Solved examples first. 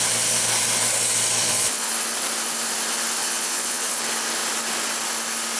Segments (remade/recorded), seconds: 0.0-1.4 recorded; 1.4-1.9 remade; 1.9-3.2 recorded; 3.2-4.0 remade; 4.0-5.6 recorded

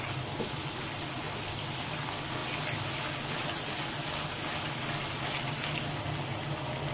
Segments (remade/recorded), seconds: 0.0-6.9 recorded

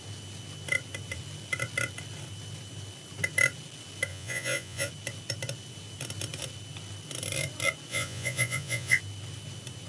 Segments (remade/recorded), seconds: 0.0-4.1 recorded; 4.1-4.9 remade; 4.9-7.9 recorded; 7.9-9.0 remade; 9.0-9.9 recorded